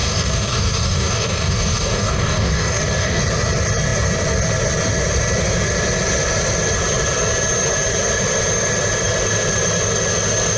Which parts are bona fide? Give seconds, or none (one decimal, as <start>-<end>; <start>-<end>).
3.2-10.6